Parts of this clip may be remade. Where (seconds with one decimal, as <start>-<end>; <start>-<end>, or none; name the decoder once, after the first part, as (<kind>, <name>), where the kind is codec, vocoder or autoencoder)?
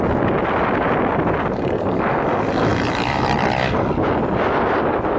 none